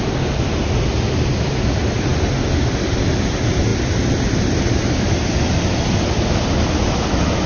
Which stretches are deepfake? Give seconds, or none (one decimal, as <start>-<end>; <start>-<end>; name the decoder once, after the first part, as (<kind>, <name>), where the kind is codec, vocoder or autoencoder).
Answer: none